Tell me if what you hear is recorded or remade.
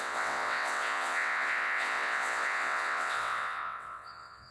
remade